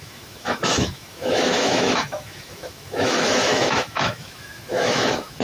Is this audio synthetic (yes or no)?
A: yes